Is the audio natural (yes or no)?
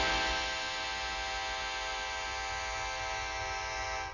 yes